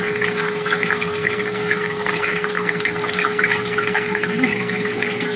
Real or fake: fake